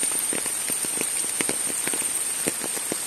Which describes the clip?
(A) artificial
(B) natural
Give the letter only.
B